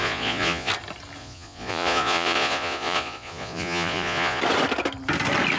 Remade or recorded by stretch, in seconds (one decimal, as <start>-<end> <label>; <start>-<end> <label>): 0.0-0.7 remade; 0.7-1.2 recorded; 1.2-4.4 remade; 4.4-5.6 recorded